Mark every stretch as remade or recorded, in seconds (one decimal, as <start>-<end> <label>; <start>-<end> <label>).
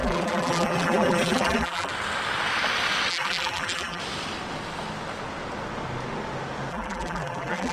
0.0-1.9 remade; 1.9-3.1 recorded; 3.1-4.0 remade; 4.0-6.7 recorded; 6.7-7.7 remade